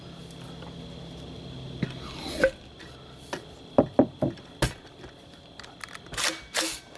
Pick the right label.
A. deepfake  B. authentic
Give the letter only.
B